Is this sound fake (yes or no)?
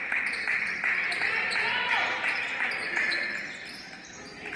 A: no